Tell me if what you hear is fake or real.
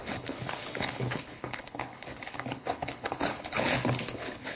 fake